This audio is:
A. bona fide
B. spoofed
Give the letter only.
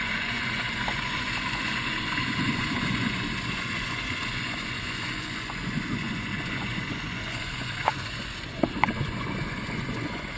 B